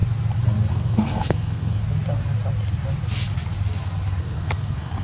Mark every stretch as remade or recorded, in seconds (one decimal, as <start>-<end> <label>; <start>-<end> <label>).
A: 0.0-0.7 recorded; 0.7-1.8 remade; 1.8-4.2 recorded; 4.2-5.0 remade